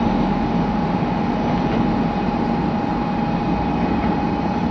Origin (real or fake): real